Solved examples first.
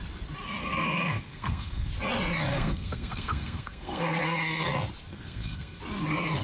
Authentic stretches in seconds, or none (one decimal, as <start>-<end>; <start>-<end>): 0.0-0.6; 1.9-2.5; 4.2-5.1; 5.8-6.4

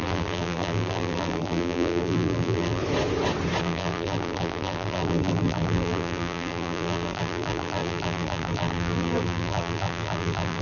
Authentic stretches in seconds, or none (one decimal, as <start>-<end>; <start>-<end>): 2.8-3.6

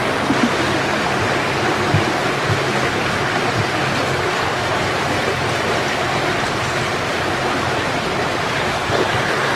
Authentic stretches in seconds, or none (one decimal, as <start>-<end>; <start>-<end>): 0.0-2.2; 3.0-4.5; 9.1-9.6

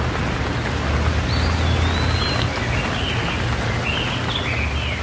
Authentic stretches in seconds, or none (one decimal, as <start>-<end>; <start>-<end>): 0.0-5.0

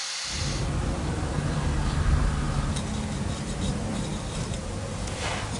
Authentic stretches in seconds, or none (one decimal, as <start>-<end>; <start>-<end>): 0.0-5.6